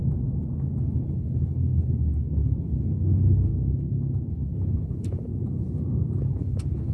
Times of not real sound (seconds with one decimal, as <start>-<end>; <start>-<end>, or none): 0.8-3.5; 4.3-5.3; 6.2-6.9